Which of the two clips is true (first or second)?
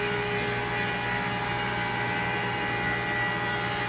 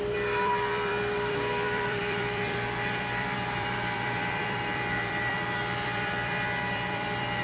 first